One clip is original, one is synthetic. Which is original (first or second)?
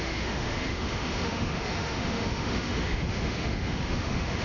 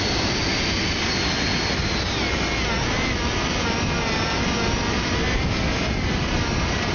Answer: second